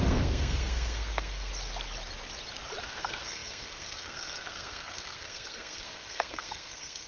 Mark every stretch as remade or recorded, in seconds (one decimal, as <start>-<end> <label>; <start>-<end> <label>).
0.0-1.5 remade; 1.5-2.8 recorded; 2.8-7.1 remade